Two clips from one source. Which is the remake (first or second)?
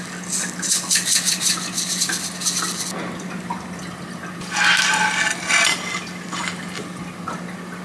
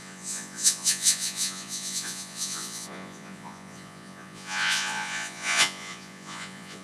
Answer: second